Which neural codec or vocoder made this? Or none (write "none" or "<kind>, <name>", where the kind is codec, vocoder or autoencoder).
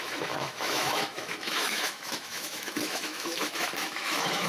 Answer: autoencoder, DAC-VAE